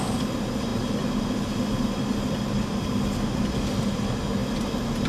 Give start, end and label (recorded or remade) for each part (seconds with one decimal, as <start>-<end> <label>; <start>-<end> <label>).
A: 0.0-5.1 recorded